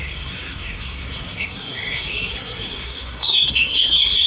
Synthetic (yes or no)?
yes